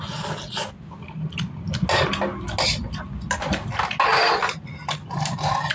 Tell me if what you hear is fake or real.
real